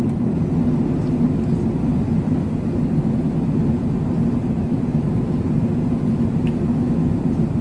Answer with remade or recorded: recorded